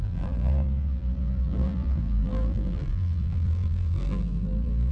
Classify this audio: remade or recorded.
remade